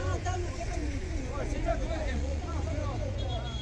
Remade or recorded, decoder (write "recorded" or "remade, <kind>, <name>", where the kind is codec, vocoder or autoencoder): remade, vocoder, Vocos